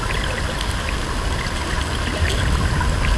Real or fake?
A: real